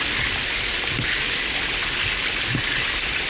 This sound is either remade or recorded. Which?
recorded